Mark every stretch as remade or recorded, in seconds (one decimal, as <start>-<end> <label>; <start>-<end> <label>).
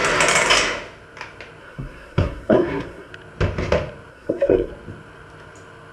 0.0-1.6 recorded; 1.6-3.1 remade; 3.1-4.1 recorded; 4.1-4.7 remade; 4.7-5.9 recorded